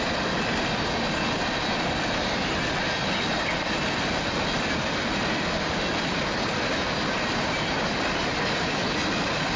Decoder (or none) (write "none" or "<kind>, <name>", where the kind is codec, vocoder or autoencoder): none